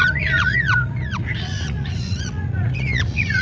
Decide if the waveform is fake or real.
fake